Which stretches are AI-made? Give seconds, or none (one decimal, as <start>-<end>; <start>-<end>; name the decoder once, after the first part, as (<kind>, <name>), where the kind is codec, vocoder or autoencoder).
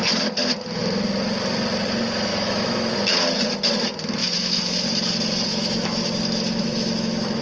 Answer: 2.3-2.9 (autoencoder, DAC-VAE); 4.2-4.9; 5.5-7.4